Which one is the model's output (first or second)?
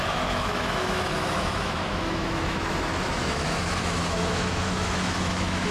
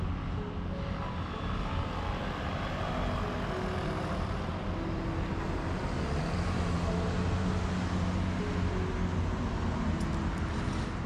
first